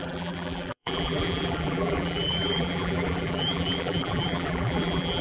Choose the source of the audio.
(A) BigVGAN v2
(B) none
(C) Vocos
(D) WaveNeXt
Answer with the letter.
A